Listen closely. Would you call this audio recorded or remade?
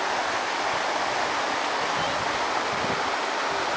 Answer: recorded